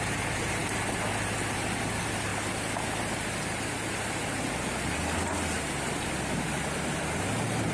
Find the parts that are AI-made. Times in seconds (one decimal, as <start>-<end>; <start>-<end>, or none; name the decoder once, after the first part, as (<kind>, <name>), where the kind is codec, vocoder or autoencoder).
none

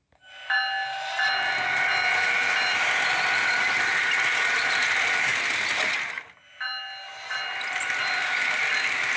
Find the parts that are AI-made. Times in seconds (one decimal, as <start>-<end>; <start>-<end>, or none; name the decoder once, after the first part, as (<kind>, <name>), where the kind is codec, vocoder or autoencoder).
none

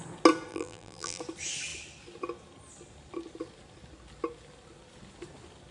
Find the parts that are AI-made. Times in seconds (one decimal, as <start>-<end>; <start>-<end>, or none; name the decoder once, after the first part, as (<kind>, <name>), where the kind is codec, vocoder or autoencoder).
0.5-1.2 (vocoder, BigVGAN v2)

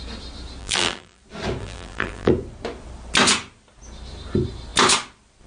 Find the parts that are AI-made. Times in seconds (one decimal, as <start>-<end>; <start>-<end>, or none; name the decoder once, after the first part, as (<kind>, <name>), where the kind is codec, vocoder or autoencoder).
0.6-1.2 (vocoder, BigVGAN v2); 1.6-2.3

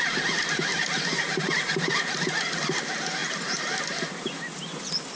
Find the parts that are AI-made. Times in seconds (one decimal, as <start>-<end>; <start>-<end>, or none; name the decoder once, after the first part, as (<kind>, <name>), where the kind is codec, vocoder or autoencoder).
none

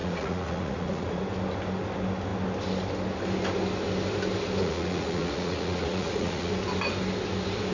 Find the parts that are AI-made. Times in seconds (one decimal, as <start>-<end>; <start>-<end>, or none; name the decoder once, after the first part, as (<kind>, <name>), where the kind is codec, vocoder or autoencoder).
0.0-1.2 (vocoder, Vocos); 4.6-6.5

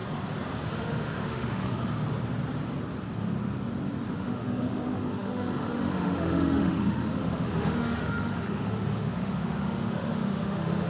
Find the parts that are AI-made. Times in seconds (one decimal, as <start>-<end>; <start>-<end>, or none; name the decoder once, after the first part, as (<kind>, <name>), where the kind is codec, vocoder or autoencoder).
0.7-1.8 (autoencoder, DAC-VAE); 4.1-10.9

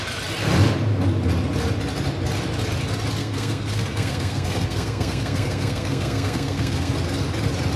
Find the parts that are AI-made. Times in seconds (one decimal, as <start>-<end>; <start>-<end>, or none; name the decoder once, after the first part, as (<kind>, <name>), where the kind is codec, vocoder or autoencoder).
3.2-6.9 (codec, SNAC)